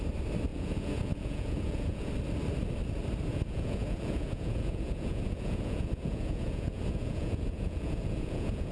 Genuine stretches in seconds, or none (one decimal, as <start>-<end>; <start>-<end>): 0.0-0.5; 2.1-3.3